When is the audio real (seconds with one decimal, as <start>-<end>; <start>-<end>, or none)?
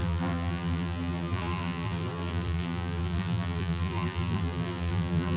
none